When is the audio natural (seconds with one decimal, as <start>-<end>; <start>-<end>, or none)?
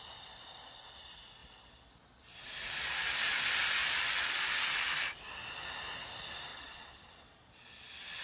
0.0-6.5; 7.2-8.2